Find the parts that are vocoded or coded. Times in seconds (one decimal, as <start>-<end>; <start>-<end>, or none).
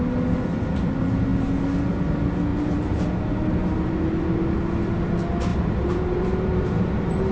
2.5-3.9; 5.5-6.6